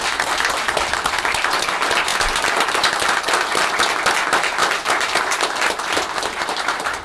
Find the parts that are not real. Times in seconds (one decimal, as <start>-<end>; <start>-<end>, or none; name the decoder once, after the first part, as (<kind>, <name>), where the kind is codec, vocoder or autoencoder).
none